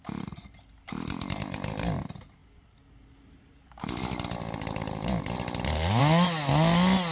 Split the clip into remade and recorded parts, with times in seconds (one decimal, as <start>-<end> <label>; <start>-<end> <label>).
0.0-7.1 recorded